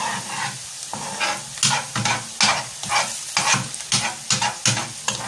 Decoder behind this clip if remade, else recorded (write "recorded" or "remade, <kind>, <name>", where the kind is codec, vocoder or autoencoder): recorded